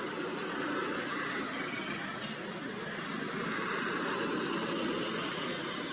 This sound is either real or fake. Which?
real